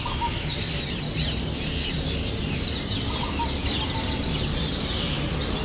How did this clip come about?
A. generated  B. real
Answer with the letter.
B